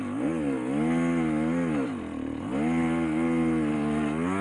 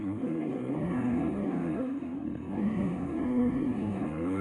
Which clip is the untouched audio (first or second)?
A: first